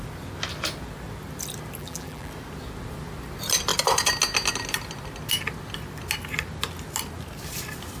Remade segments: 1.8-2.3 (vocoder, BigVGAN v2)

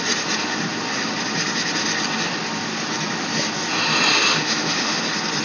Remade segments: 4.1-5.0 (autoencoder, DAC-VAE)

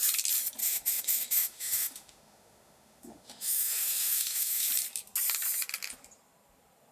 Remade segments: 0.6-4.7 (autoencoder, DAC-VAE)

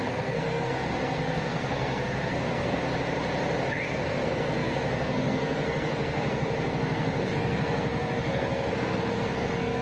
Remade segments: 0.0-2.8 (codec, SNAC); 3.7-9.8